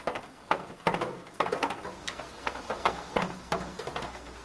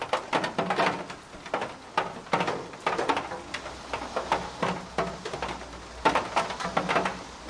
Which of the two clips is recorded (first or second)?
second